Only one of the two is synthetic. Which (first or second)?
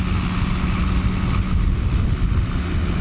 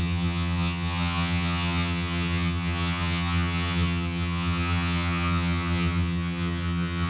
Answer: second